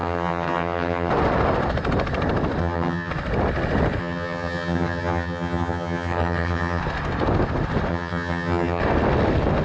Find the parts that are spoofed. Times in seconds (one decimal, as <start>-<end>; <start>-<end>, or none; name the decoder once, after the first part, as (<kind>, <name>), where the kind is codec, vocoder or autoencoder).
0.0-1.1 (vocoder, HiFi-GAN); 2.6-3.1; 4.0-6.8; 7.9-8.8